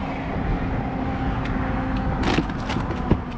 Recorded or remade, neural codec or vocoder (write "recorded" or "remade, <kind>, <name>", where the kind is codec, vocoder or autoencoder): recorded